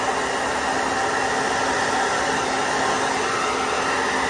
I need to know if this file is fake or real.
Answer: real